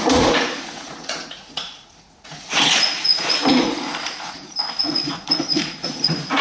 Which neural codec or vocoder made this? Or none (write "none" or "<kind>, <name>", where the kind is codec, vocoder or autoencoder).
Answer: vocoder, Vocos